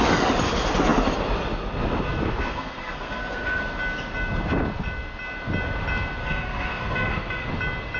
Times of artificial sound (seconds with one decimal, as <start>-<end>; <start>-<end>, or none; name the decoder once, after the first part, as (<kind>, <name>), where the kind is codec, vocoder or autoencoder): 2.5-3.6 (codec, SNAC); 6.2-7.5